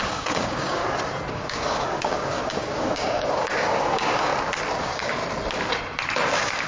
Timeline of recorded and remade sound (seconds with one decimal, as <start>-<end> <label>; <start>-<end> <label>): 0.0-0.8 remade; 0.8-1.3 recorded; 1.3-4.3 remade; 4.3-4.8 recorded; 4.8-5.2 remade; 5.2-6.3 recorded; 6.3-6.7 remade